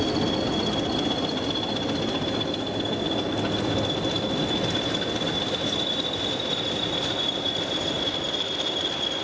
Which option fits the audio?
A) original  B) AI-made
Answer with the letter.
A